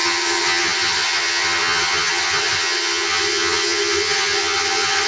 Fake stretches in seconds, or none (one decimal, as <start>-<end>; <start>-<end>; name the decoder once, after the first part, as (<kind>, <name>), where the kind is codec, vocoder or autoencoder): 0.0-5.1 (vocoder, HiFi-GAN)

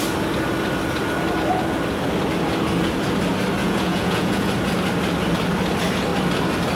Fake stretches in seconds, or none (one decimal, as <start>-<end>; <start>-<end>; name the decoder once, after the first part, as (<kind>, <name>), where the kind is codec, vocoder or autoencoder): 3.6-4.5 (vocoder, Vocos)

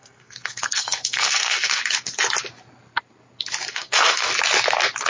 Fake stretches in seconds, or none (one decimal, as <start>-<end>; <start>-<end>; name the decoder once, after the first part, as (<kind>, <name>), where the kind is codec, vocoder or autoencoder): 0.0-1.8 (codec, SNAC); 3.7-4.3

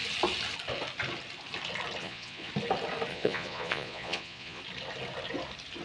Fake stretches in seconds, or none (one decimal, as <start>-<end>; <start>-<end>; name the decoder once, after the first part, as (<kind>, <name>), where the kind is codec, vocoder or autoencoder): 2.0-2.5 (vocoder, Vocos); 3.1-4.6

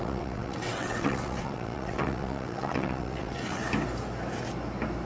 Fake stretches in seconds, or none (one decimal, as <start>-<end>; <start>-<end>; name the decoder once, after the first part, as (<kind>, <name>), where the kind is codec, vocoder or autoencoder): 0.0-3.6 (vocoder, WaveNeXt)